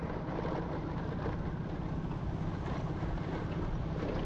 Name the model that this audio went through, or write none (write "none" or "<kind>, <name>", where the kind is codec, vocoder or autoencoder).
none